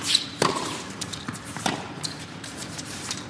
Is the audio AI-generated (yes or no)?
yes